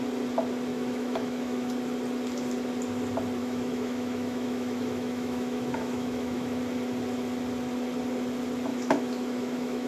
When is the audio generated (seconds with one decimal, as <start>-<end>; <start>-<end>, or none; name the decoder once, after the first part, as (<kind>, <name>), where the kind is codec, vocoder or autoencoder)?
0.7-1.7 (autoencoder, DAC-VAE); 3.4-6.6; 8.7-9.9